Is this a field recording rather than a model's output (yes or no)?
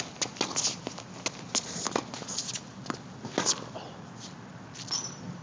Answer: yes